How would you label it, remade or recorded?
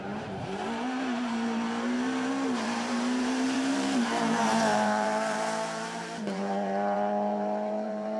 remade